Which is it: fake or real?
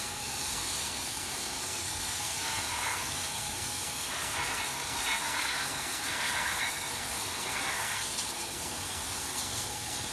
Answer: fake